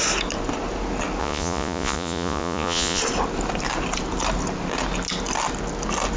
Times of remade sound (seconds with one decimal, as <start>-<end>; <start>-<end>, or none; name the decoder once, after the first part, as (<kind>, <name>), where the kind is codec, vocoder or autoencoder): 1.2-3.0 (vocoder, Vocos)